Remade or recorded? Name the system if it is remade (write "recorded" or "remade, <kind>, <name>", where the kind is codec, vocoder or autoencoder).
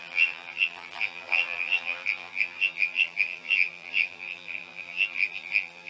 remade, vocoder, BigVGAN v2